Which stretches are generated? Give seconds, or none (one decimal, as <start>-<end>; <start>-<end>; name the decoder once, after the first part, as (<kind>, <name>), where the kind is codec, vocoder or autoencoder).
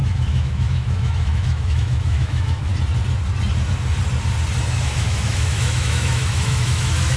0.0-2.7 (autoencoder, DAC-VAE); 4.8-7.2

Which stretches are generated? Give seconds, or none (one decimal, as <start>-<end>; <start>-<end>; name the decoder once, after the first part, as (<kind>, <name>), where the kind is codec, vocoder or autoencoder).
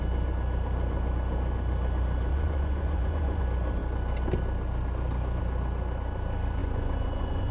2.3-3.4 (vocoder, Vocos); 6.6-7.5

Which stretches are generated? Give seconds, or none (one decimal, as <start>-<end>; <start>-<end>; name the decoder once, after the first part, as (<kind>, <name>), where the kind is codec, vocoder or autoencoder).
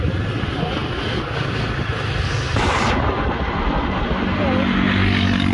none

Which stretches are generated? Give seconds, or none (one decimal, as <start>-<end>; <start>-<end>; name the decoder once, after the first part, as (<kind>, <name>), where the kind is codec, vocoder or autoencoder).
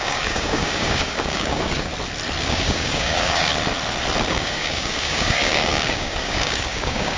0.0-1.9 (codec, DAC); 2.4-3.5; 4.3-7.2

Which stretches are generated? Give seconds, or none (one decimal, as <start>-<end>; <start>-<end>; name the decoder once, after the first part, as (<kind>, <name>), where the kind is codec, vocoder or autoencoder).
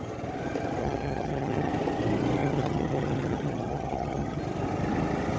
0.8-1.7 (vocoder, HiFi-GAN); 2.4-4.4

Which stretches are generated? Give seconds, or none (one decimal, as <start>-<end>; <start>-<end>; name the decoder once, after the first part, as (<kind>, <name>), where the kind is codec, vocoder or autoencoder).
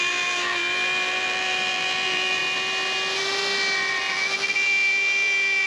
0.0-2.4 (vocoder, BigVGAN v2); 4.1-5.7